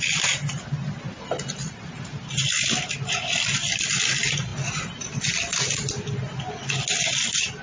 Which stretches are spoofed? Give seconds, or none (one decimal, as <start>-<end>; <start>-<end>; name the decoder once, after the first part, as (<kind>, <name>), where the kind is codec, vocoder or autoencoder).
none